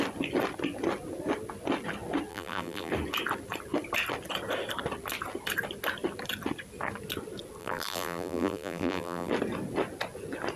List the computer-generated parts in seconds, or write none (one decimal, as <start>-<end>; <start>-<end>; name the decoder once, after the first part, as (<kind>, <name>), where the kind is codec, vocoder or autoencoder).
2.3-2.9 (vocoder, BigVGAN v2); 7.6-9.3